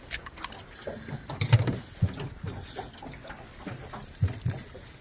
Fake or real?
real